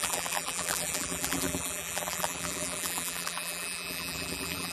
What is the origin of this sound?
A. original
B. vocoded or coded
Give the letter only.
B